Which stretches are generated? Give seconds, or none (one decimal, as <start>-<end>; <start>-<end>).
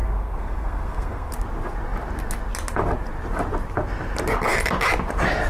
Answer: 0.0-1.3